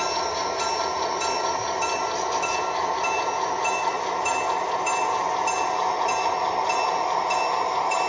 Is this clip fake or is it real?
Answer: real